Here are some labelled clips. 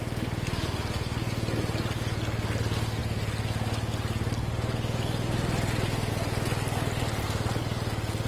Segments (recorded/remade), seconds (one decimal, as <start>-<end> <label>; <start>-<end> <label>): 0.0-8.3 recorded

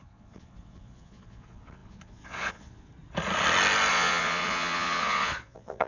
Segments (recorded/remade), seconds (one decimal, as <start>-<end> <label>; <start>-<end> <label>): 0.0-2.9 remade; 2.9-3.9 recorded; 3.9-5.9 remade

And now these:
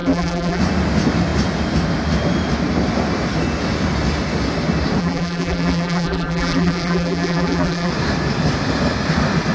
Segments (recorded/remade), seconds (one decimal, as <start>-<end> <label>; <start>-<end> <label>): 0.0-0.6 remade; 0.6-5.0 recorded; 5.0-7.9 remade; 7.9-9.5 recorded